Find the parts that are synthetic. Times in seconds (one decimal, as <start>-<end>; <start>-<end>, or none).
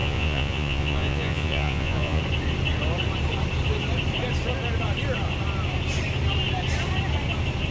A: 0.0-2.2